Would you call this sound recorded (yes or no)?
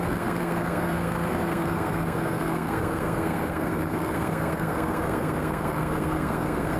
no